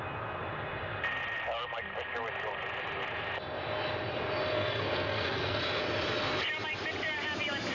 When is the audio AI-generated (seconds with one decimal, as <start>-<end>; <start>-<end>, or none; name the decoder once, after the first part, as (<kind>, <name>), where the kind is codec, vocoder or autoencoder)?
4.5-5.6 (codec, SNAC)